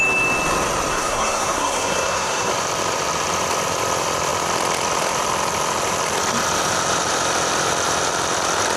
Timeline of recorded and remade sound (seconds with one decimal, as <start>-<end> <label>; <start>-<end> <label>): 0.0-0.9 recorded; 0.9-2.5 remade; 2.5-8.8 recorded